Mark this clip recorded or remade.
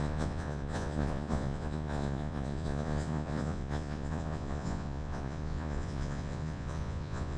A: remade